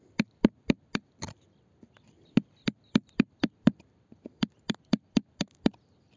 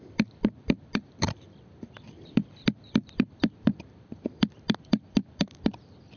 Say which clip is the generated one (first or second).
second